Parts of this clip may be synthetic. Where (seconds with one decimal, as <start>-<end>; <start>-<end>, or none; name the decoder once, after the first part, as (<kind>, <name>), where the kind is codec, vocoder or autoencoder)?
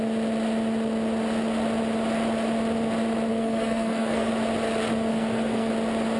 3.3-4.3 (codec, SNAC); 5.1-5.7